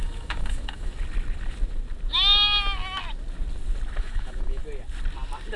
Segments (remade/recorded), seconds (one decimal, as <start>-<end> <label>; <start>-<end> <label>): 0.0-0.9 remade; 0.9-4.0 recorded; 4.0-4.6 remade; 4.6-5.6 recorded